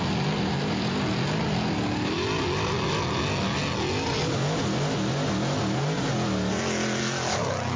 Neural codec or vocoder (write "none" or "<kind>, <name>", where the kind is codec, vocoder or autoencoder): none